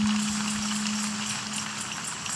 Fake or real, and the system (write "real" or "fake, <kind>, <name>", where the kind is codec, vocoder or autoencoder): real